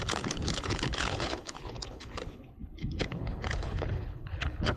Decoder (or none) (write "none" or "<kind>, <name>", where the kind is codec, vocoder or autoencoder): codec, HILCodec